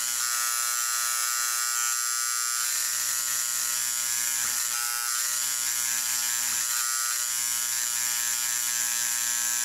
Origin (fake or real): real